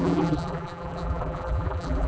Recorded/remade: remade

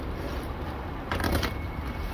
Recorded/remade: recorded